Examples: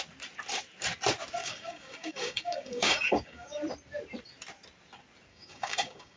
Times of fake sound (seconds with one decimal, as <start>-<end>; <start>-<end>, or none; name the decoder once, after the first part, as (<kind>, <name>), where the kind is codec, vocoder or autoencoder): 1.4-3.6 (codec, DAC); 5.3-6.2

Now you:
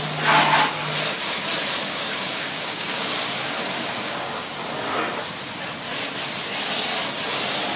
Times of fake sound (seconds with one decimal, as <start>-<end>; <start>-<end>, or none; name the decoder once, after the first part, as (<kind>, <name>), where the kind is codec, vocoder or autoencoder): 1.8-3.2 (codec, DAC); 4.0-4.5

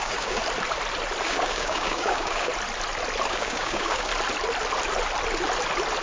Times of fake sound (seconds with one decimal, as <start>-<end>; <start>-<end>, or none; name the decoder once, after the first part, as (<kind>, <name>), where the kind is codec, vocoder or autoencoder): 0.0-0.4 (codec, DAC); 1.2-2.5; 3.3-4.1